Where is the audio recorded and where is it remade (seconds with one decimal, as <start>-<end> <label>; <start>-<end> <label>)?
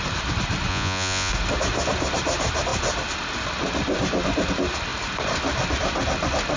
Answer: 0.0-0.7 recorded; 0.7-1.3 remade; 1.3-6.6 recorded